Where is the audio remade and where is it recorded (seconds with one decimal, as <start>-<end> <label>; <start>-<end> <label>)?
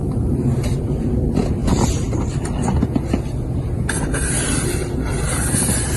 0.0-6.0 recorded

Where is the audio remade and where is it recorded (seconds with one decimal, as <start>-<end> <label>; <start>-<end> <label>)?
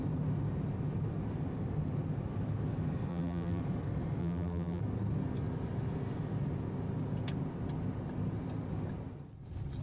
0.0-3.1 recorded; 3.1-3.6 remade; 3.6-4.2 recorded; 4.2-4.8 remade; 4.8-9.8 recorded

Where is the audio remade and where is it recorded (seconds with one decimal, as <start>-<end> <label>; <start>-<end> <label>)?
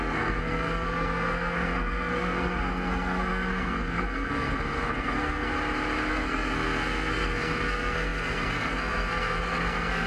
0.0-5.5 remade; 5.5-6.1 recorded; 6.1-10.1 remade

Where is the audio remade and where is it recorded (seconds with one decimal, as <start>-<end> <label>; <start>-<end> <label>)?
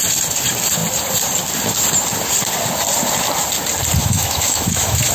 0.0-4.0 recorded; 4.0-5.1 remade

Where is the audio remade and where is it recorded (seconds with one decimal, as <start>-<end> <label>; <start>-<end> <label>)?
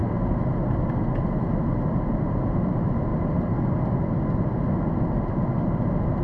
0.0-6.2 recorded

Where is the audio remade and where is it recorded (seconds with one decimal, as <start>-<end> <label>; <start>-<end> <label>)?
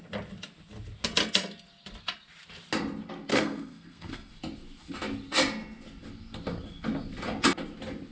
0.0-3.3 recorded; 3.3-4.3 remade; 4.3-8.1 recorded